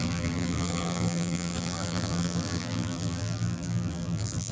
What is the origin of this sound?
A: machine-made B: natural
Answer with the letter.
A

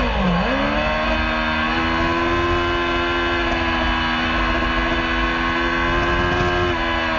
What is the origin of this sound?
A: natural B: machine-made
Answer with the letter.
A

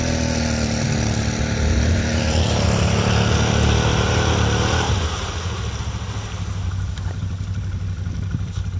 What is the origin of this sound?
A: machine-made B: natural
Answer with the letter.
B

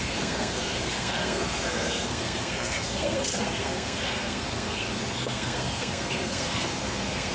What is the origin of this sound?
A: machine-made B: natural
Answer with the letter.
A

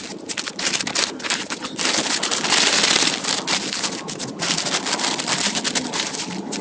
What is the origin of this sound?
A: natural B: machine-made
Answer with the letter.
A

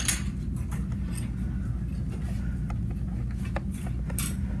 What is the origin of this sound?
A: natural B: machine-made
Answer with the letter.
A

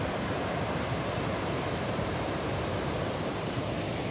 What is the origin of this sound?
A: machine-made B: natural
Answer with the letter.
A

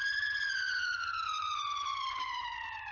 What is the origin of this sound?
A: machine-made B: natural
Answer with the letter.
A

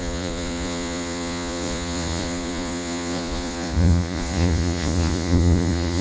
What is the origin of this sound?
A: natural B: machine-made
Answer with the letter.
B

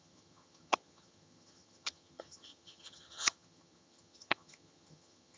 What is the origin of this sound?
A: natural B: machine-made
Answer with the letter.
B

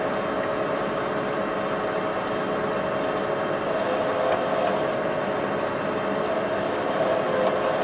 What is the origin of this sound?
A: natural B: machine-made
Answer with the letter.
A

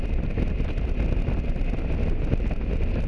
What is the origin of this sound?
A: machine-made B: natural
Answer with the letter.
B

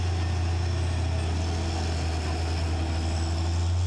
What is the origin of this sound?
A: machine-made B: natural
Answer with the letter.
B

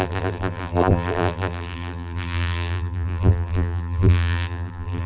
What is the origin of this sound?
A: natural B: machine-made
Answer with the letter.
B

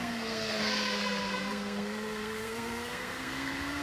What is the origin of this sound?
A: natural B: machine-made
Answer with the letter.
B